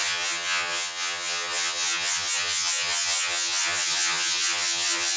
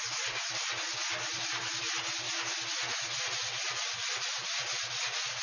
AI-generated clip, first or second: first